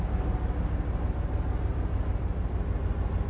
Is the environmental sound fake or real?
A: real